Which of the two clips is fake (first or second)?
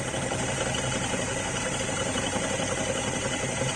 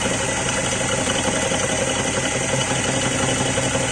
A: first